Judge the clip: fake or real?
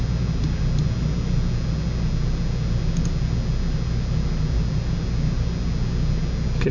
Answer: real